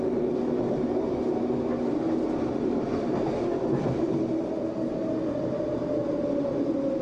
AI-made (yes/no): no